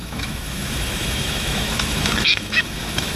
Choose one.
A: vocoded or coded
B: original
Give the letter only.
A